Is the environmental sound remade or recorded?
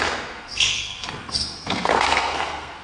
remade